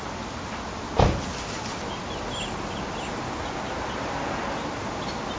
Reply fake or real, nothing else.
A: real